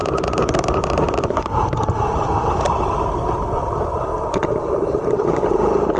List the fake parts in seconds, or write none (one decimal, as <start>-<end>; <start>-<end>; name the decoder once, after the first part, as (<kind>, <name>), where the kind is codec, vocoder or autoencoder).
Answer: 0.0-6.0 (vocoder, BigVGAN v2)